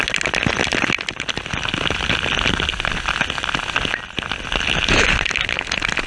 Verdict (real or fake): real